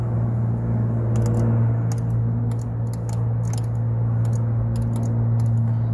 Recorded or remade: recorded